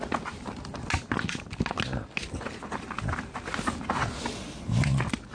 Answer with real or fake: real